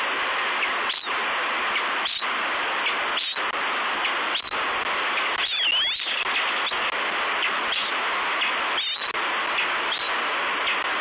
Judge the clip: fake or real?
real